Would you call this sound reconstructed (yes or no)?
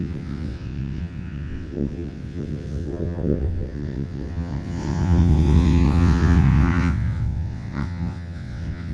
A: yes